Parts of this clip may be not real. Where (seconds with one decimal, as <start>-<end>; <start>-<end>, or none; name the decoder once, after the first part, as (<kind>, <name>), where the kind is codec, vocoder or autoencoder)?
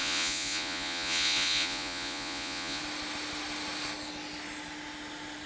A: 0.0-2.8 (vocoder, Vocos)